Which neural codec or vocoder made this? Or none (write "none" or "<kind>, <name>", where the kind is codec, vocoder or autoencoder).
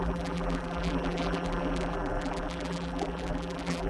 vocoder, BigVGAN v2